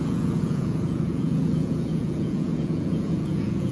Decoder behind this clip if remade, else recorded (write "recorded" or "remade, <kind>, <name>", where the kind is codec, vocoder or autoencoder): remade, vocoder, Vocos